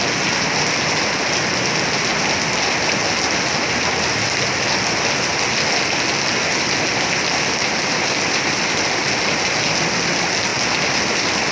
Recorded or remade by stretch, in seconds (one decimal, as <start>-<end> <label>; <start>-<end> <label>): 0.0-11.5 recorded